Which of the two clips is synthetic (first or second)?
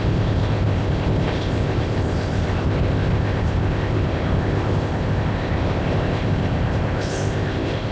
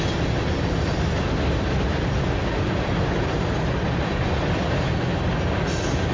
first